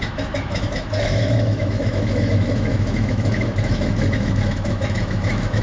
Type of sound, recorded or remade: remade